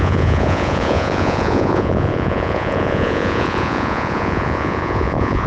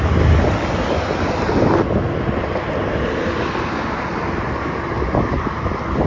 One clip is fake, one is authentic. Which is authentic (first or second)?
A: second